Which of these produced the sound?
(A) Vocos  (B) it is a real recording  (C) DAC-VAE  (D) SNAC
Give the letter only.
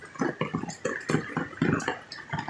B